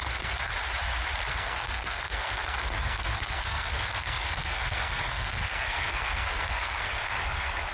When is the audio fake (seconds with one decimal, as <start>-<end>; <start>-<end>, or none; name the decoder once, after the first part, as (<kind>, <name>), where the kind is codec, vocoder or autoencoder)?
0.0-0.5 (codec, SNAC); 1.3-7.7